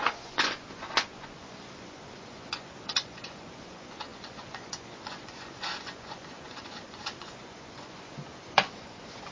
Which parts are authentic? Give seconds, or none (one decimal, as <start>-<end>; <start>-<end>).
none